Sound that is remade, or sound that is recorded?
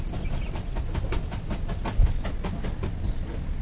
recorded